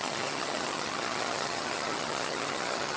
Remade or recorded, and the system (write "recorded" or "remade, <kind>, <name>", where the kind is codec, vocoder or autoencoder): remade, vocoder, HiFi-GAN